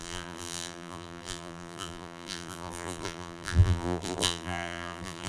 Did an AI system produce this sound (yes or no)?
yes